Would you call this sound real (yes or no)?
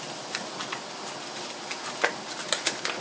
yes